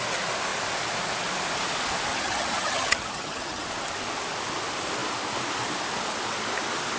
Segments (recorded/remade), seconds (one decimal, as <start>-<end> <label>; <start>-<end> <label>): 0.0-2.1 recorded; 2.1-3.7 remade; 3.7-7.0 recorded